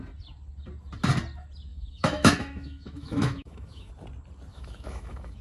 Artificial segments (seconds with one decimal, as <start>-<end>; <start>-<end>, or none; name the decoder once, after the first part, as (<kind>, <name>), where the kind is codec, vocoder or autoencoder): 1.7-3.9 (autoencoder, DAC-VAE); 4.5-5.4